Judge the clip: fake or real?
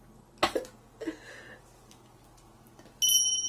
real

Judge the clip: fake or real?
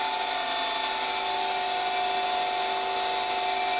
real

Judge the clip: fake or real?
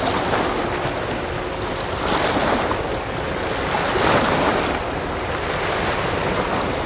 real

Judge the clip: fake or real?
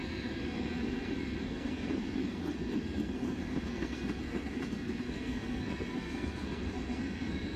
fake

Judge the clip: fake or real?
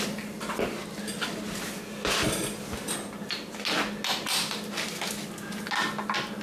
real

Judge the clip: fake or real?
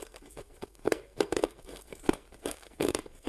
fake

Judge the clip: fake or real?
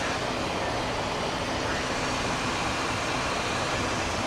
real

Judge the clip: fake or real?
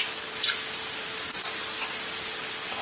real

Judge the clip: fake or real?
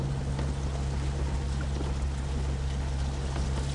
real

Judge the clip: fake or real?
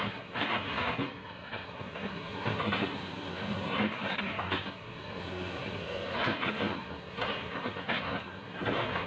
fake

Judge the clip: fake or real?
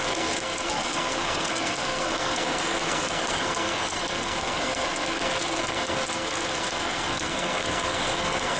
fake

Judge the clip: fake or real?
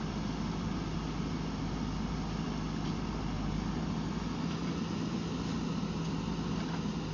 real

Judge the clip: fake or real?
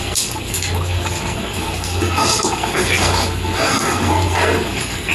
fake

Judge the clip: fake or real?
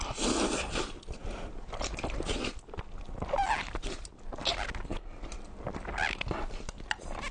real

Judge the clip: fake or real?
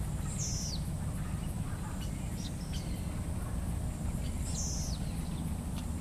real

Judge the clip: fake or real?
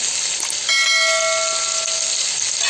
real